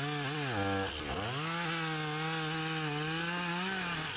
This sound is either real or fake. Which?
real